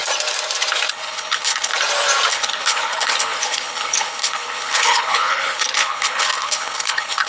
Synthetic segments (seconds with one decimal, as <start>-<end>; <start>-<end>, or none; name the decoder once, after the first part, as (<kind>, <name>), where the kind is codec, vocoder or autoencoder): 0.9-1.7 (codec, HILCodec); 2.3-7.3